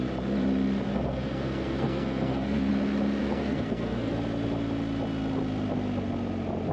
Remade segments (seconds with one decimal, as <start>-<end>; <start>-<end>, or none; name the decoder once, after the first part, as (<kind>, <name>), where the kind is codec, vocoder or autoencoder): 0.9-2.7 (codec, SNAC); 3.2-4.1